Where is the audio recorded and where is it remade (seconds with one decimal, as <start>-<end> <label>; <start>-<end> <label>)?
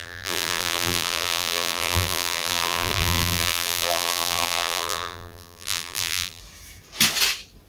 0.0-6.4 remade; 6.4-7.7 recorded